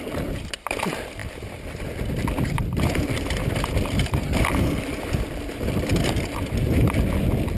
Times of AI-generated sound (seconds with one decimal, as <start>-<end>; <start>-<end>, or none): 0.0-7.6